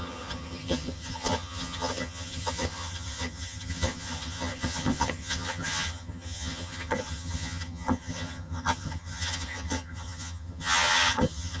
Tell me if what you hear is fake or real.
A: fake